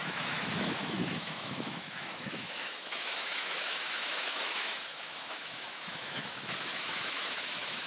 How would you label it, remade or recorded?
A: remade